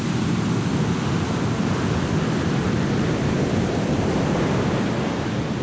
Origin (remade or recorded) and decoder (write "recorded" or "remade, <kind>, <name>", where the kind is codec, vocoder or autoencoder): recorded